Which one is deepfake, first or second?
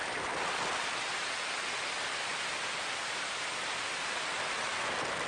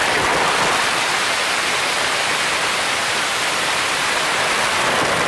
second